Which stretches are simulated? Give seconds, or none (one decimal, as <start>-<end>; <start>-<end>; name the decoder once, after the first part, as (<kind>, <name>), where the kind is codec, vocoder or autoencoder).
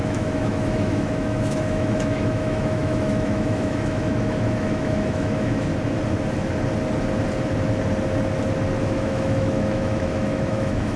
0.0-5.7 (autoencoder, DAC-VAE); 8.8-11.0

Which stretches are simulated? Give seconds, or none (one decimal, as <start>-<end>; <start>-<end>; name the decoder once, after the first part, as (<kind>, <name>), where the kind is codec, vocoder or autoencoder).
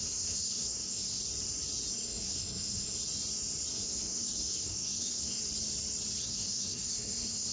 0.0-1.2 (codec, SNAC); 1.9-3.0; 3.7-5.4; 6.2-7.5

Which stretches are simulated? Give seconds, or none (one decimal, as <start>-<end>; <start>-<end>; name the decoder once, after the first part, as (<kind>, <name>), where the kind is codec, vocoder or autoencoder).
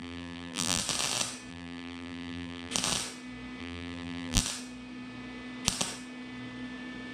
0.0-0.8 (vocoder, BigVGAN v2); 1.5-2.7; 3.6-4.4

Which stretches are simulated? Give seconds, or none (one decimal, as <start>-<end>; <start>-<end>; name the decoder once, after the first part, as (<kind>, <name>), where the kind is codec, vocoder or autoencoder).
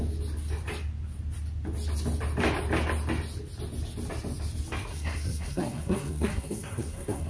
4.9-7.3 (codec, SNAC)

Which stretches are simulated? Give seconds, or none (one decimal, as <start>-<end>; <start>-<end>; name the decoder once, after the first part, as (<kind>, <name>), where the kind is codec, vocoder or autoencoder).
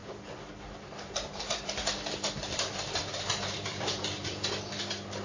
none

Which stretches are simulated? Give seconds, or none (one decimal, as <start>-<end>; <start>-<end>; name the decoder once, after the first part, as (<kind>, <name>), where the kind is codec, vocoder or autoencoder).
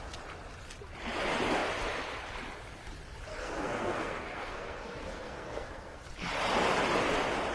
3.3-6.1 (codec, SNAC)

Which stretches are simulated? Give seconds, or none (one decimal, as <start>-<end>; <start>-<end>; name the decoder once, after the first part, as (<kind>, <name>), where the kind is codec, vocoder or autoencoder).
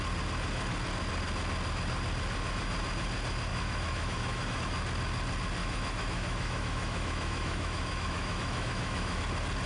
3.5-4.6 (autoencoder, DAC-VAE); 5.6-9.2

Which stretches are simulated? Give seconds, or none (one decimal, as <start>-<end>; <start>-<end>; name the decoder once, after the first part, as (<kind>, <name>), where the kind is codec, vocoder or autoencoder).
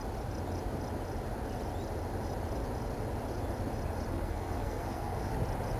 4.1-5.2 (codec, SNAC)